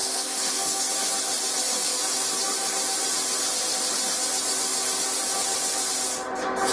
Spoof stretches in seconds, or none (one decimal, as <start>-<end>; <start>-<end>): 0.0-0.9